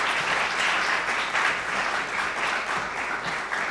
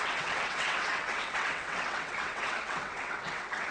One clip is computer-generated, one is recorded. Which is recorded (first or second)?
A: first